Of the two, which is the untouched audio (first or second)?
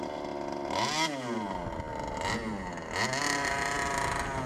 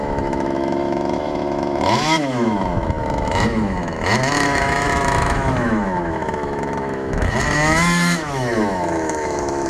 first